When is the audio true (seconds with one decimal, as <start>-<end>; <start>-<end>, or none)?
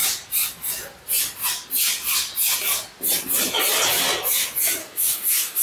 0.0-4.8